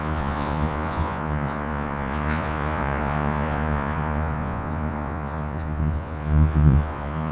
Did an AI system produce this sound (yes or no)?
yes